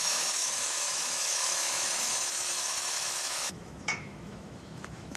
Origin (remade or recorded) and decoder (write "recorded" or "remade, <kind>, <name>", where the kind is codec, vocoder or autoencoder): remade, autoencoder, DAC-VAE